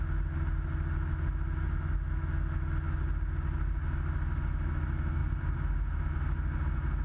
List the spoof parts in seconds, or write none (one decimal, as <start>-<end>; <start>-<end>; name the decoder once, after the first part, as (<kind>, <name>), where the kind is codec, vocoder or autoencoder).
5.2-6.0 (vocoder, BigVGAN v2)